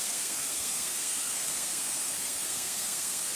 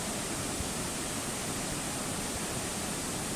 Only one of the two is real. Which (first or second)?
second